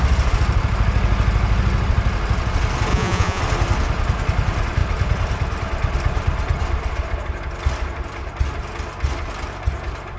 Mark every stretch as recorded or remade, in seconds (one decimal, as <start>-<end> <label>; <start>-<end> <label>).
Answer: 0.0-2.9 recorded; 2.9-3.4 remade; 3.4-10.2 recorded